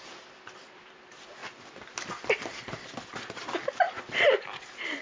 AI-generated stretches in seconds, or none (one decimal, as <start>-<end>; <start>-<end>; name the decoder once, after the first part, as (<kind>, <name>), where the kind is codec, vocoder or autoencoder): 0.0-1.4 (vocoder, BigVGAN v2); 4.0-5.0